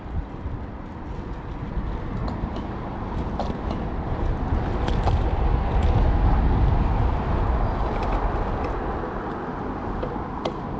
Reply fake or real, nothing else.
real